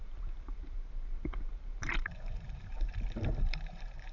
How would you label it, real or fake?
fake